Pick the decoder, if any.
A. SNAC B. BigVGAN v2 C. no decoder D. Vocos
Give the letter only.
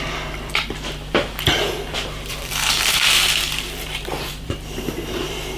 B